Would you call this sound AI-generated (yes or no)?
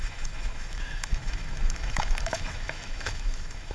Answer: yes